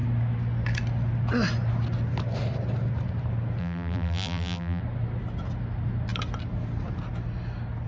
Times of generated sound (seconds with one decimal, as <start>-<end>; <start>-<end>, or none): 3.6-4.8